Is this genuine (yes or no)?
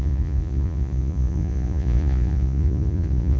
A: no